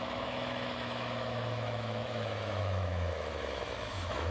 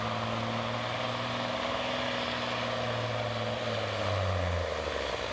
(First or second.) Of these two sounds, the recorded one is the second